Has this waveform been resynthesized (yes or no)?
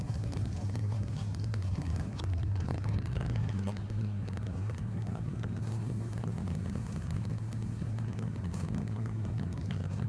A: yes